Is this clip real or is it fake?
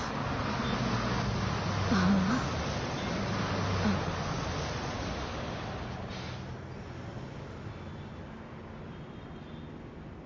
real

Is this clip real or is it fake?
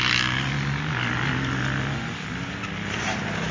real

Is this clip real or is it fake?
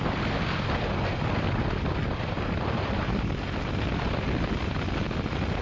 real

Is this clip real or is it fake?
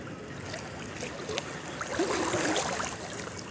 real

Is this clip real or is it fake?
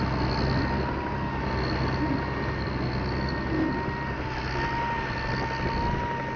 real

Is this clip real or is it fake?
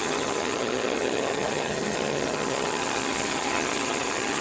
fake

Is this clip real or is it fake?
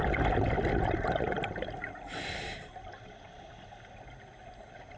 real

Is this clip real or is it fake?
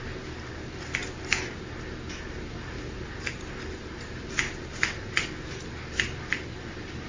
real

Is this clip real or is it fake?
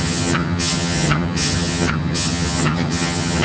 fake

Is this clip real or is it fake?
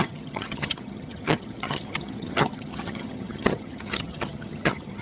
fake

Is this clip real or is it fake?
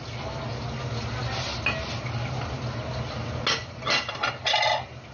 real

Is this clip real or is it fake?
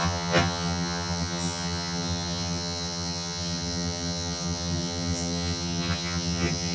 fake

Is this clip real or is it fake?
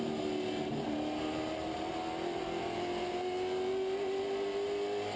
real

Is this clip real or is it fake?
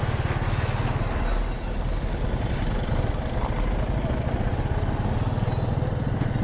real